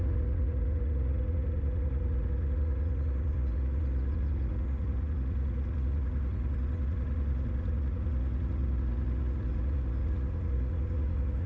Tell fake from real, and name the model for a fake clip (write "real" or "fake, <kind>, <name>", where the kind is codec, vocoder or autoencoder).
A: fake, vocoder, Vocos